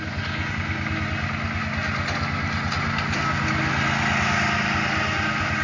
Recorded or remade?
recorded